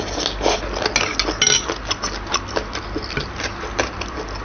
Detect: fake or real real